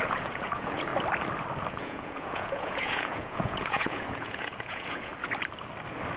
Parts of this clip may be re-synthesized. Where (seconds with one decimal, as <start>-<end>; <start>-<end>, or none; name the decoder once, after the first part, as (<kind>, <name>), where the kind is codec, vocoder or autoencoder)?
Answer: 0.0-0.9 (vocoder, Vocos); 1.7-5.1

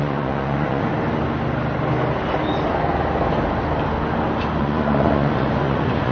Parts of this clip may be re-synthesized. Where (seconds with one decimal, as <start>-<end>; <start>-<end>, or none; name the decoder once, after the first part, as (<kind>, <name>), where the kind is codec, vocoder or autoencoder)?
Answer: 0.0-0.9 (vocoder, Vocos); 4.6-6.1